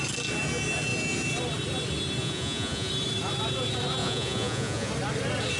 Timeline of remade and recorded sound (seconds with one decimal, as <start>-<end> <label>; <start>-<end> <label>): 0.0-2.2 recorded; 2.2-2.9 remade; 2.9-4.0 recorded; 4.0-4.9 remade; 4.9-5.6 recorded